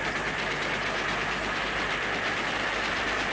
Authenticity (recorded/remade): recorded